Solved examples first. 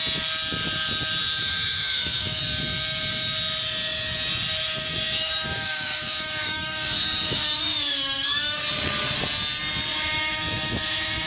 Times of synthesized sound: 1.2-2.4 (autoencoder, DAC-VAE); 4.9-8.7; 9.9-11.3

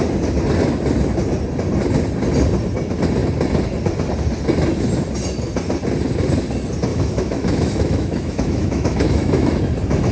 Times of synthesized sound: 6.9-9.6 (autoencoder, DAC-VAE)